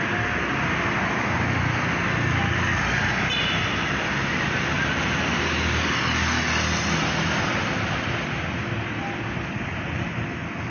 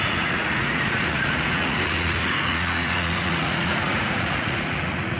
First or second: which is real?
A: first